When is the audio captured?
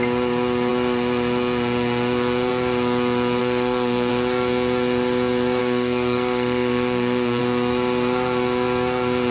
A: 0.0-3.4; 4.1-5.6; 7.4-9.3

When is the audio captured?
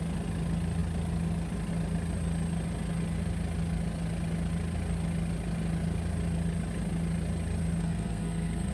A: 0.0-7.8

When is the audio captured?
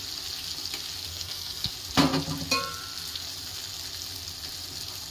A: 0.0-1.1; 1.7-5.1